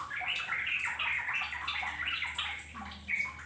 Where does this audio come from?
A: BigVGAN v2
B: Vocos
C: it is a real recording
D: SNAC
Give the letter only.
C